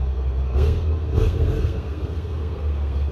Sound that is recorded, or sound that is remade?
remade